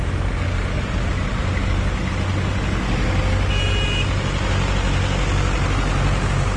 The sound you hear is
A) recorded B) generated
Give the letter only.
A